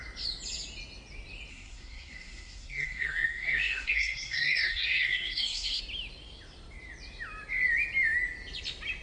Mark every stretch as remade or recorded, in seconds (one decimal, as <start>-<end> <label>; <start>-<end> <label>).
0.0-1.5 recorded; 1.5-5.8 remade; 5.8-9.0 recorded